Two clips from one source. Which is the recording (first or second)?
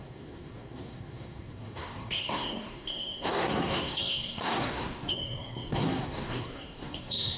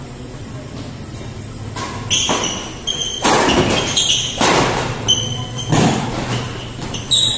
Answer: second